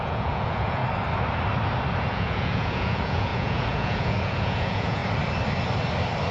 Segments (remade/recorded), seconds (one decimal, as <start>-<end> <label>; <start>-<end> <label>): 0.0-0.8 remade; 0.8-2.0 recorded; 2.0-5.0 remade; 5.0-6.3 recorded